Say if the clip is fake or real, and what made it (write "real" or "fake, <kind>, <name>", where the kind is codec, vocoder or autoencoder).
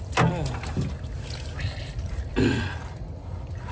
real